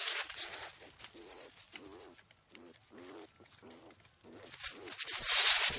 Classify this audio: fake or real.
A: real